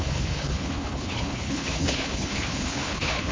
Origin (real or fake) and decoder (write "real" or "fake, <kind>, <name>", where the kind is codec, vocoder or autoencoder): fake, codec, HILCodec